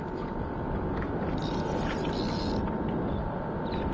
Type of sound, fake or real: real